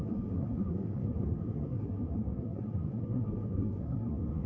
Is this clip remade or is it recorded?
remade